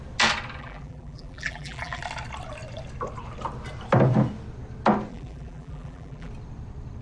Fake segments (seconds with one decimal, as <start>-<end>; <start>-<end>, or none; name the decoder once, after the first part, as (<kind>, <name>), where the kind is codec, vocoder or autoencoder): 0.6-2.0 (vocoder, BigVGAN v2); 5.1-6.3